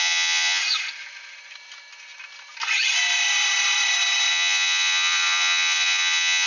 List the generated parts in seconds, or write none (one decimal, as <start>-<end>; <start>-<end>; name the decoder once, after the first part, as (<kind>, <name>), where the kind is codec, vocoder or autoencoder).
0.0-0.6 (vocoder, Vocos); 4.3-6.5